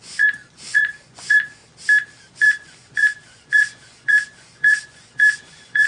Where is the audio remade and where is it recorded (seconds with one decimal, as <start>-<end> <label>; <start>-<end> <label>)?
0.0-1.6 remade; 1.6-2.2 recorded; 2.2-5.9 remade